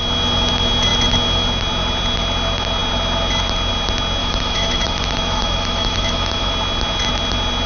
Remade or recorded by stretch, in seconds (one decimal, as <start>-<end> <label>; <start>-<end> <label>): 0.0-4.2 recorded; 4.2-6.5 remade; 6.5-7.7 recorded